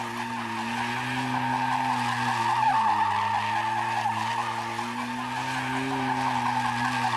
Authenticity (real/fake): real